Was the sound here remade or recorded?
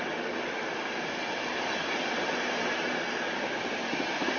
recorded